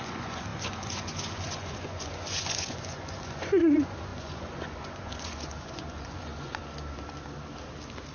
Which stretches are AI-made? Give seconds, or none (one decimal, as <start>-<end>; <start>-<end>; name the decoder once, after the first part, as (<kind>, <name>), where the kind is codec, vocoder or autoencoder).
0.0-6.6 (vocoder, Vocos)